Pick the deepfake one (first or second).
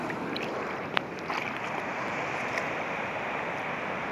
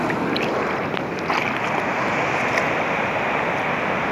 first